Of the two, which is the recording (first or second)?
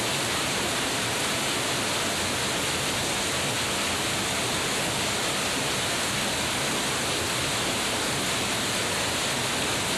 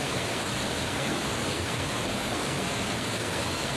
first